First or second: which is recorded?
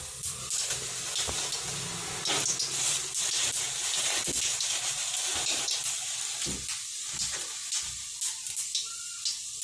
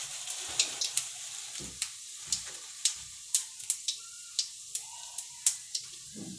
first